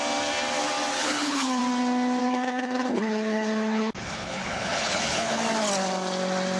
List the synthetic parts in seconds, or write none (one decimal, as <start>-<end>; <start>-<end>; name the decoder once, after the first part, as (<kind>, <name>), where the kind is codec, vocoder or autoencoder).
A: 1.0-1.6 (codec, HILCodec); 2.2-5.4